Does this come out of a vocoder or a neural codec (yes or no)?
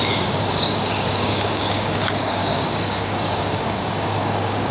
yes